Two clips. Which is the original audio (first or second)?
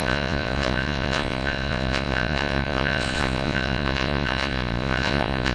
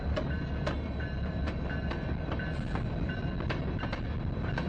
second